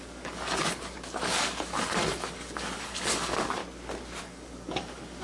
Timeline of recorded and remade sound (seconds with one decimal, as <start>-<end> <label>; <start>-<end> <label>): 0.0-3.6 remade; 3.6-4.2 recorded; 4.2-5.2 remade